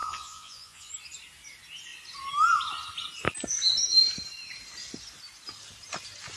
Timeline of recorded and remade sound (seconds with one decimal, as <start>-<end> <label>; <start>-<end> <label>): 0.0-0.9 remade; 0.9-6.4 recorded